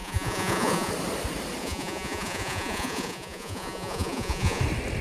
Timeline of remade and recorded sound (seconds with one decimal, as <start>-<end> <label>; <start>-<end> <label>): 0.0-0.9 remade; 0.9-1.6 recorded; 1.6-4.6 remade; 4.6-5.0 recorded